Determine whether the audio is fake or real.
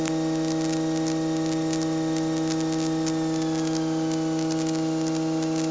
real